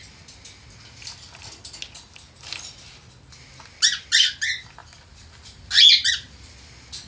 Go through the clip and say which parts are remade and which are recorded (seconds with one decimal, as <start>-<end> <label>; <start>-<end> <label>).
0.0-7.1 recorded